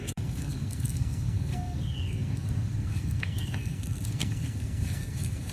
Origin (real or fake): fake